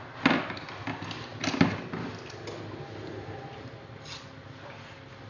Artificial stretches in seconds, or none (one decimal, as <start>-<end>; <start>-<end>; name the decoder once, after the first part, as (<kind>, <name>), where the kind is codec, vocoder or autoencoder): none